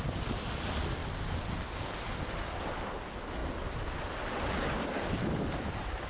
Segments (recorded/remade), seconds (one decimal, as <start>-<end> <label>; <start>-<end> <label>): 0.0-6.1 recorded